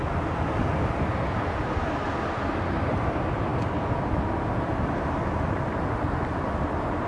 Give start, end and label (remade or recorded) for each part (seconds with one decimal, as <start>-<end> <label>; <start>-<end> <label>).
0.0-7.1 recorded